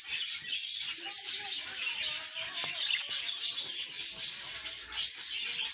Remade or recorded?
recorded